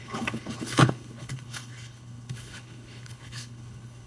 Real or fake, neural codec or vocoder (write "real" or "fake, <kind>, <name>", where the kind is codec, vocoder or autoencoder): fake, codec, HILCodec